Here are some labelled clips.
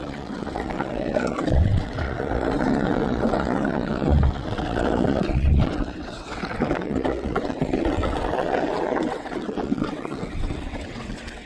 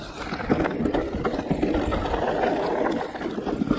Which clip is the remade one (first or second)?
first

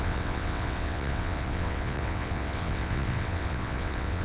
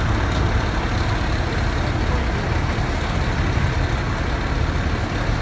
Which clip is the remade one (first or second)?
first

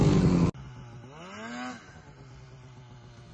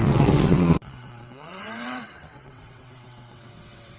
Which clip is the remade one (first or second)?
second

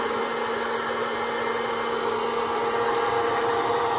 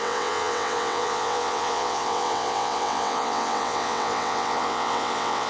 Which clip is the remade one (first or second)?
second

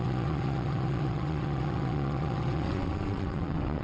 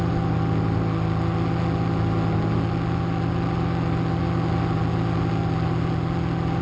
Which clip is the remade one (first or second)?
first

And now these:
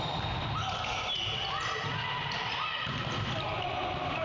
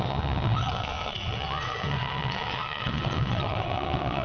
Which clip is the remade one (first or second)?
second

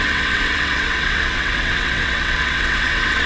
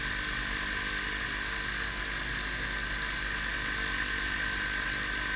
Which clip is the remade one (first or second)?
first